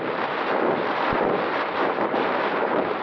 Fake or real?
real